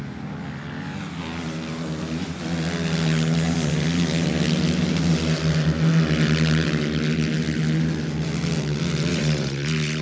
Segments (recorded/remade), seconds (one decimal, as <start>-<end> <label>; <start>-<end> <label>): 0.0-9.1 recorded; 9.1-10.0 remade